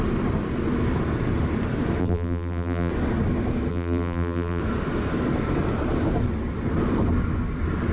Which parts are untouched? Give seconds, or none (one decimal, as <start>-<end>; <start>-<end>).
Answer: 0.0-2.0; 2.9-3.7; 4.6-7.9